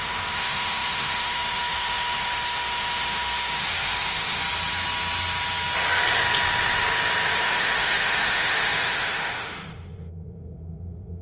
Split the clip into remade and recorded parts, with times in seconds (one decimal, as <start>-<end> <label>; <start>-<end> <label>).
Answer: 0.0-4.4 remade; 4.4-7.4 recorded; 7.4-11.2 remade